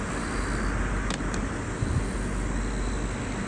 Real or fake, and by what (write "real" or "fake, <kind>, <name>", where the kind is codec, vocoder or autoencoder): real